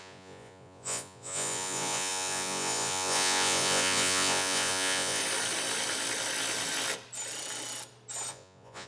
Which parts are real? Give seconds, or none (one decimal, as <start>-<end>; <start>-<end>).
5.2-8.3